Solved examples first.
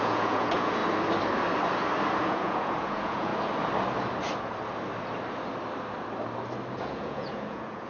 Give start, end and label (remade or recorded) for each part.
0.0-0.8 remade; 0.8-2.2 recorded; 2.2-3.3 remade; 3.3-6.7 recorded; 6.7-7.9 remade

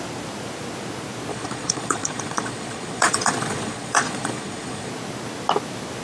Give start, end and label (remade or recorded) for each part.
0.0-1.3 recorded; 1.3-4.9 remade; 4.9-6.0 recorded

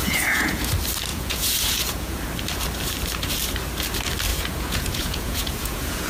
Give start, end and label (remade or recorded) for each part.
0.0-0.7 remade; 0.7-1.1 recorded; 1.1-2.2 remade; 2.2-4.3 recorded; 4.3-6.1 remade

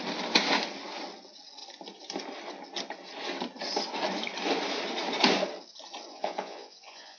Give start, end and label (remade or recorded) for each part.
0.0-6.1 recorded; 6.1-7.2 remade

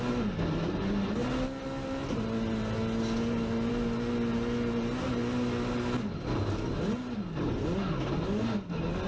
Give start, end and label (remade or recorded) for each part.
0.0-9.1 recorded

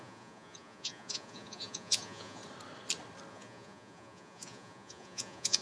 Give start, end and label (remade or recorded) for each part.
0.0-2.4 remade; 2.4-3.3 recorded; 3.3-5.6 remade